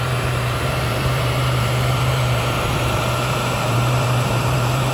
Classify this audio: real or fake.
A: fake